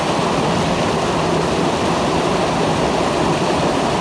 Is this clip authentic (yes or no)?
yes